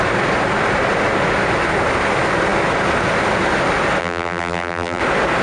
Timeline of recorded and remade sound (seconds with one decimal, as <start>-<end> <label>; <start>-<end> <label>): 0.0-4.0 recorded; 4.0-5.0 remade; 5.0-5.4 recorded